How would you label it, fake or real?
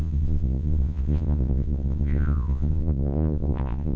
fake